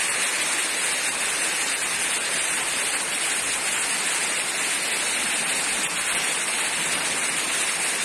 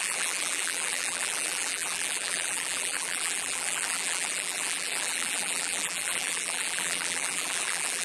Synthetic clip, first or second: second